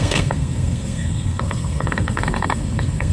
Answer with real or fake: fake